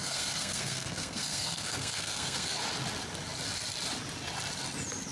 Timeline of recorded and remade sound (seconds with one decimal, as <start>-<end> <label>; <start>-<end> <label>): 0.0-2.6 remade; 2.6-5.1 recorded